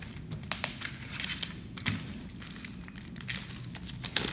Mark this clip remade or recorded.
recorded